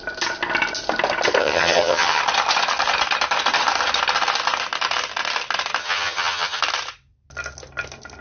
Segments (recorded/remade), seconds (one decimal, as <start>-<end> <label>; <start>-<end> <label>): 0.0-1.4 recorded; 1.4-2.2 remade; 2.2-5.8 recorded; 5.8-6.6 remade; 6.6-8.2 recorded